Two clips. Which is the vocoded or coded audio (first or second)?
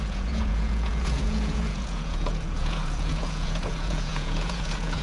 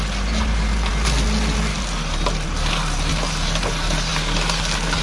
first